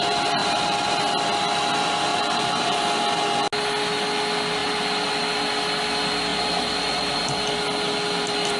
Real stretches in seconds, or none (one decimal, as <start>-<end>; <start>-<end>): 0.0-0.4; 1.0-2.1; 2.8-6.3; 7.1-8.6